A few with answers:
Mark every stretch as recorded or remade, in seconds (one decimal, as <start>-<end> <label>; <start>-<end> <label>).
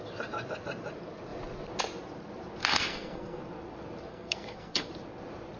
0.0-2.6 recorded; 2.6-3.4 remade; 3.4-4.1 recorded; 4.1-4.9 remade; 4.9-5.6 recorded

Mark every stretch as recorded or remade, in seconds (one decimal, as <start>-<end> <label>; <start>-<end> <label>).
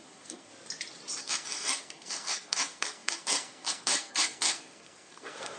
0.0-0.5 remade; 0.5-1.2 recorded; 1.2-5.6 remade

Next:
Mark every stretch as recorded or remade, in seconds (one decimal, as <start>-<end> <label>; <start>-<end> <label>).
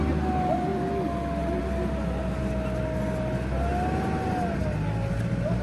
0.0-5.6 recorded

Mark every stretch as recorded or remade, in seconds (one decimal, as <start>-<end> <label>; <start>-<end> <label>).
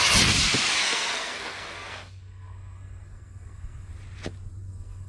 0.0-0.8 recorded; 0.8-3.9 remade; 3.9-4.6 recorded; 4.6-5.1 remade